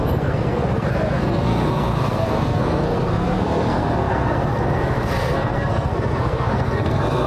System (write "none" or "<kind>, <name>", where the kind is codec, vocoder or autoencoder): codec, SNAC